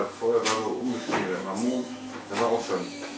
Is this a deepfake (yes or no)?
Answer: yes